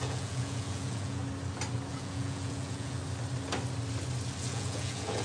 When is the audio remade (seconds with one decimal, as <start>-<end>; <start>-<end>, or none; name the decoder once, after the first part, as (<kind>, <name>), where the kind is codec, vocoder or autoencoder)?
0.0-1.2 (vocoder, Vocos); 1.9-3.0; 4.4-5.2